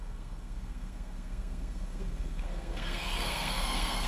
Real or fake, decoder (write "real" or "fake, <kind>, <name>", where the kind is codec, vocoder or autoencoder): fake, codec, SNAC